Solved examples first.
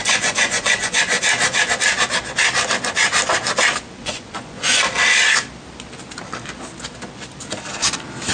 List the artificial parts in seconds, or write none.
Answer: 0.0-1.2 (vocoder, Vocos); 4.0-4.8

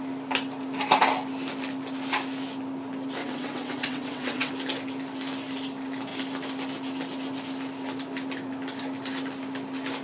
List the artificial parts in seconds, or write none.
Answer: 3.2-4.5 (vocoder, WaveNeXt)

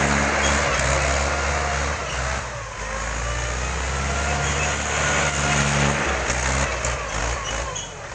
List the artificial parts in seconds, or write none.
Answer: none

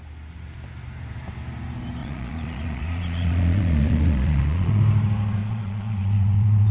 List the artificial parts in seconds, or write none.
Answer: 2.0-4.8 (vocoder, Vocos); 5.4-6.7